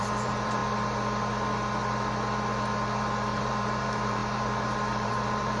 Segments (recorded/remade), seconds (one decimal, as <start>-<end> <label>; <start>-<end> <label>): 0.0-0.6 remade; 0.6-3.4 recorded; 3.4-5.6 remade

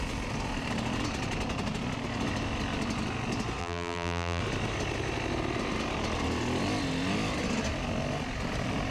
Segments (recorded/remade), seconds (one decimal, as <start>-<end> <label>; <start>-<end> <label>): 0.0-3.6 recorded; 3.6-4.4 remade; 4.4-8.9 recorded

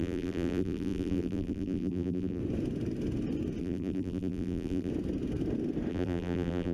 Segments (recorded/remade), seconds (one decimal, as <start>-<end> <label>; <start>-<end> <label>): 0.0-2.4 remade; 2.4-3.6 recorded; 3.6-4.9 remade; 4.9-5.9 recorded; 5.9-6.7 remade

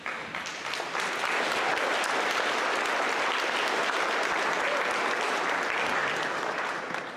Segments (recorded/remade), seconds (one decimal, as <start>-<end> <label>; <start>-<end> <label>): 0.0-6.0 recorded; 6.0-7.2 remade

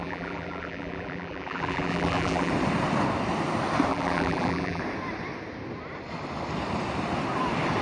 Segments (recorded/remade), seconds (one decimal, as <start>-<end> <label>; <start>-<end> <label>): 0.0-2.5 remade; 2.5-3.9 recorded; 3.9-4.8 remade; 4.8-7.8 recorded

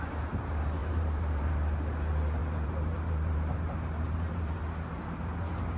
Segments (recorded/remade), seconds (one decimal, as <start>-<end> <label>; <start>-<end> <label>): 0.0-0.8 recorded; 0.8-1.5 remade; 1.5-2.4 recorded; 2.4-5.8 remade

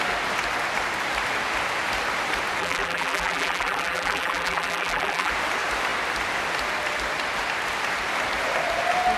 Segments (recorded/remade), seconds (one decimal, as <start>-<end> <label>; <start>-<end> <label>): 0.0-2.6 recorded; 2.6-5.3 remade; 5.3-9.2 recorded